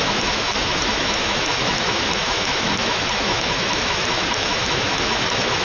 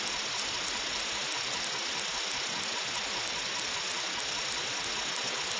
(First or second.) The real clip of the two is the second